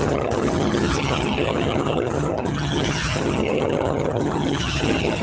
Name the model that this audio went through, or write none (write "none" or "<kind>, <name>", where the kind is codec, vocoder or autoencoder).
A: vocoder, HiFi-GAN